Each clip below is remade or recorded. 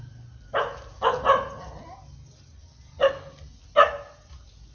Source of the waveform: recorded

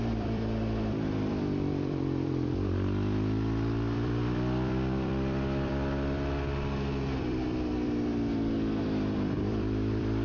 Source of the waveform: remade